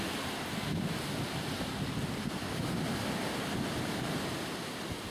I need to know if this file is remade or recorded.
recorded